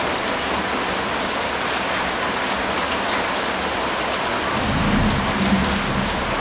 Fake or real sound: real